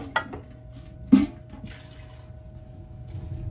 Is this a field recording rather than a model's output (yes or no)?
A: yes